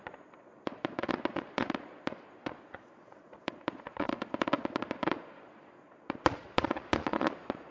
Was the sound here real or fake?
fake